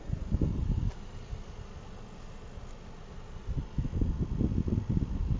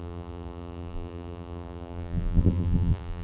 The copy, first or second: second